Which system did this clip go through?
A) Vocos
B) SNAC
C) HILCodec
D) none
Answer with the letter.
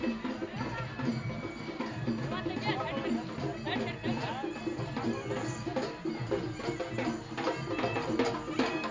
D